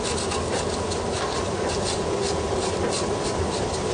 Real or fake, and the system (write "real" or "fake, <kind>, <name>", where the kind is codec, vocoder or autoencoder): real